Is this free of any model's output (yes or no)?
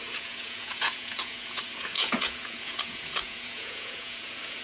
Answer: no